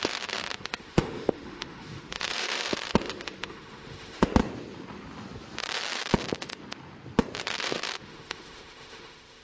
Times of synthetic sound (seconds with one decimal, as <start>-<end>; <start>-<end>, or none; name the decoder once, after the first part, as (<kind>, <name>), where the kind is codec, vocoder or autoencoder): 0.0-4.4 (autoencoder, DAC-VAE); 7.4-9.4